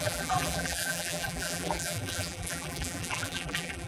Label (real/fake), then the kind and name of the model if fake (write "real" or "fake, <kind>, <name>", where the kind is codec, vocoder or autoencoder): fake, vocoder, BigVGAN v2